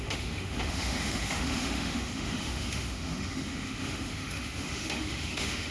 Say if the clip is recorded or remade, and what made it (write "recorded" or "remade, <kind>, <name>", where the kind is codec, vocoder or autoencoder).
remade, autoencoder, DAC-VAE